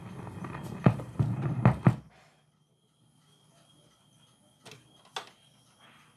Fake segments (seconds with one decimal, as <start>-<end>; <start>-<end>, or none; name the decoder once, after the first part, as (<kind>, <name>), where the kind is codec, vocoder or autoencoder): 0.4-1.6 (vocoder, BigVGAN v2)